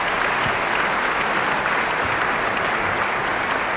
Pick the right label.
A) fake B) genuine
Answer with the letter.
B